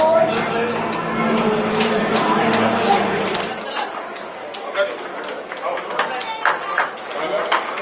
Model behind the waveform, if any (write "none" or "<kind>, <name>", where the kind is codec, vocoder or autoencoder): none